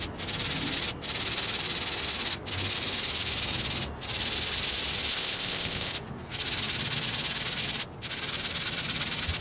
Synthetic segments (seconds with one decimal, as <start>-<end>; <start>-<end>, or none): 5.1-5.9